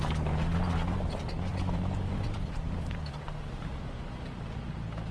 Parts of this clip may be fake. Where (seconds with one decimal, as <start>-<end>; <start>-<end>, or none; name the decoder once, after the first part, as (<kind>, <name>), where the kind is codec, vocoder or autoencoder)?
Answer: 1.5-4.6 (vocoder, BigVGAN v2)

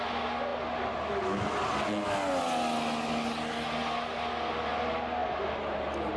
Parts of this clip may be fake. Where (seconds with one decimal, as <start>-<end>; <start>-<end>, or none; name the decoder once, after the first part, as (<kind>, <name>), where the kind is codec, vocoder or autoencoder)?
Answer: 5.2-6.2 (vocoder, BigVGAN v2)

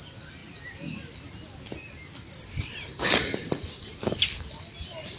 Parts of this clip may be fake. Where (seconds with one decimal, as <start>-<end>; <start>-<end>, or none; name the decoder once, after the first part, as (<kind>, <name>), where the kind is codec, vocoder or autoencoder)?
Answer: none

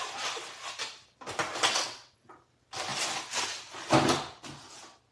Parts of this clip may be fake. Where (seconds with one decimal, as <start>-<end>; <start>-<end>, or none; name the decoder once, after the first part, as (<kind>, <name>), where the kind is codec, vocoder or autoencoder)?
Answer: 1.7-2.3 (vocoder, WaveNeXt)

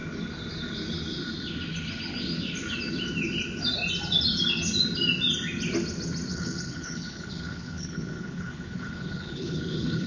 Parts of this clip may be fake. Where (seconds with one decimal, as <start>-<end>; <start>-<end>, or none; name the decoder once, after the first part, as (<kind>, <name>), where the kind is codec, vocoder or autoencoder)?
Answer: 6.3-10.1 (codec, HILCodec)

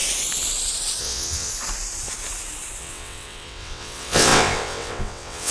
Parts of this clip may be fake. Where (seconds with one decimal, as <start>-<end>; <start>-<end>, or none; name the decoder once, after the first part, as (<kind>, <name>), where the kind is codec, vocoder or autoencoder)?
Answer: 1.0-1.5 (vocoder, WaveNeXt); 2.8-5.5